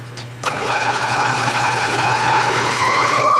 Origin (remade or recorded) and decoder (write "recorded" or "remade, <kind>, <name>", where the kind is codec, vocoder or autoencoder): remade, codec, HILCodec